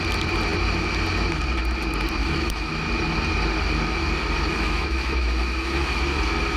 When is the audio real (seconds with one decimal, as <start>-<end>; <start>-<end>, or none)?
0.0-2.2; 2.7-4.5; 6.0-6.6